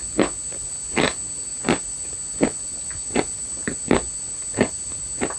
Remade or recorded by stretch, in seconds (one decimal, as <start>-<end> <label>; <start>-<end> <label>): 0.0-5.4 remade